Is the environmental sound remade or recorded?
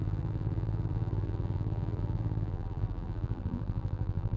remade